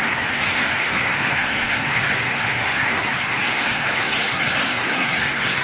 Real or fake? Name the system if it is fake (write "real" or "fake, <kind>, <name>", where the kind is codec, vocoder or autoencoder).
fake, codec, SNAC